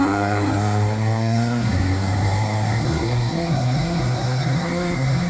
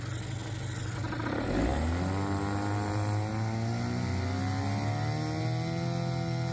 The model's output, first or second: first